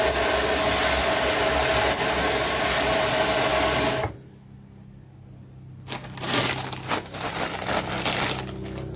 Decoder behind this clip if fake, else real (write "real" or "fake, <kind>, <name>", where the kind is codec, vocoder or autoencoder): real